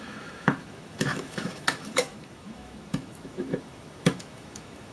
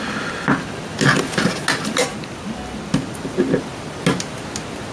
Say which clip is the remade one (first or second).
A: first